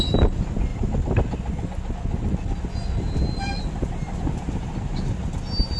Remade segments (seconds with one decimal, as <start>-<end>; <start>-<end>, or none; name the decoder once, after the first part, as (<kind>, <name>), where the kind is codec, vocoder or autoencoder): none